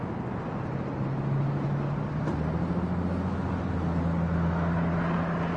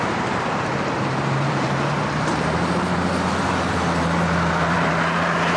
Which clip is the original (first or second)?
first